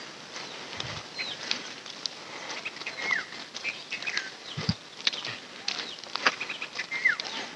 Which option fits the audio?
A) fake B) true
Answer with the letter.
B